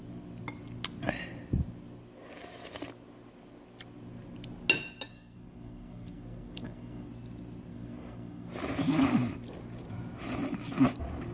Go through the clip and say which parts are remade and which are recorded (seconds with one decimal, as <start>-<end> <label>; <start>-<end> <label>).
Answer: 0.0-5.1 recorded; 5.1-7.1 remade; 7.1-7.7 recorded; 7.7-8.5 remade; 8.5-11.3 recorded